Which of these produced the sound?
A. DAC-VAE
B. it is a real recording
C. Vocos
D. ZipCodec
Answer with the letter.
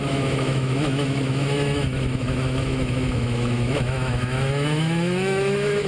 A